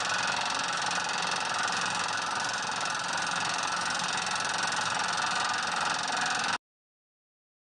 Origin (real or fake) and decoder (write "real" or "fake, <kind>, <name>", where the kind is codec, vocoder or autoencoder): real